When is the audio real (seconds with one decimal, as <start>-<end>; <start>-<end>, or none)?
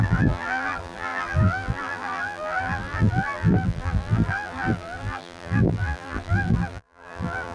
none